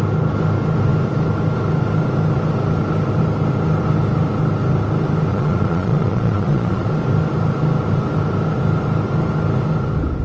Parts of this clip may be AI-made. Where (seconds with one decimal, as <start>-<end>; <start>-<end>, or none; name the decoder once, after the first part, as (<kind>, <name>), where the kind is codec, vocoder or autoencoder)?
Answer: 5.3-6.9 (vocoder, Vocos)